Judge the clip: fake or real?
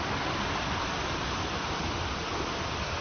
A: real